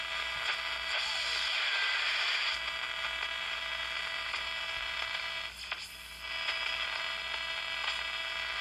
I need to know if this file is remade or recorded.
recorded